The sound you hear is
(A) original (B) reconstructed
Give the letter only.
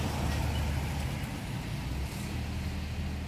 A